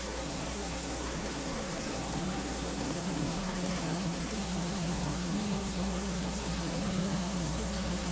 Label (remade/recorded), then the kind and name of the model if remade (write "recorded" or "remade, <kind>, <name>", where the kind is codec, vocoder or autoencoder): remade, codec, SNAC